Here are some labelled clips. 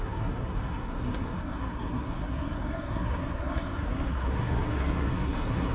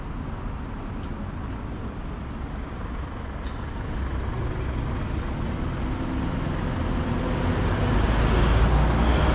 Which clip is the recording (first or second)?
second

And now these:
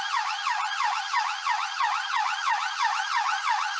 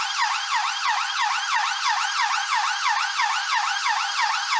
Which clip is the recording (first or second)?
second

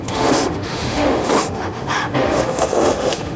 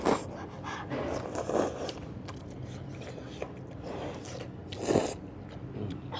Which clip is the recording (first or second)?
second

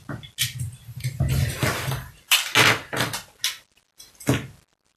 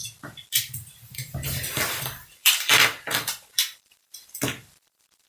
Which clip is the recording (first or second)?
first